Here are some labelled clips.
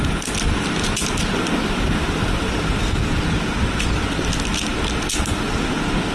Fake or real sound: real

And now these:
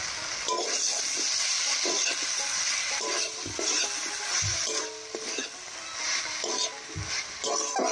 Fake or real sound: real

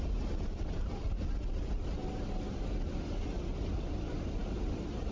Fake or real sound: real